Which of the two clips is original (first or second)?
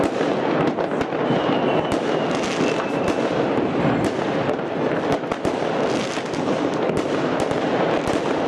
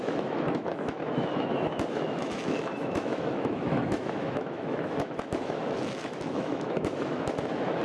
first